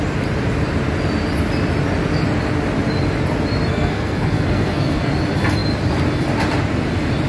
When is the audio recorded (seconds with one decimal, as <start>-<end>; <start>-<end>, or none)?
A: 0.0-3.7; 5.1-7.3